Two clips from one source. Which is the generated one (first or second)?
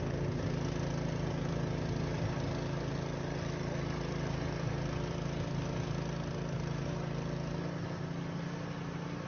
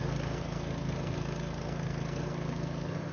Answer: second